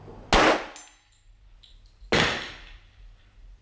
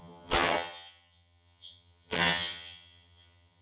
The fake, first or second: second